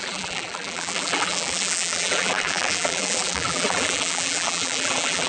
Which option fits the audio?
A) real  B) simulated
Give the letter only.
B